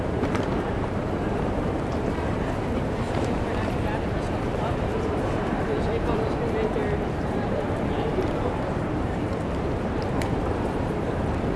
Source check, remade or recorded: remade